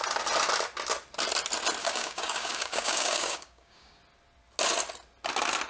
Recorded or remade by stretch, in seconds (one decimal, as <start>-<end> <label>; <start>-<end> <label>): 0.0-1.8 recorded; 1.8-4.0 remade; 4.0-5.7 recorded